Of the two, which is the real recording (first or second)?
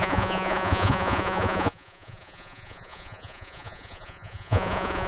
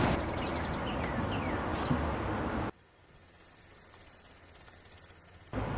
second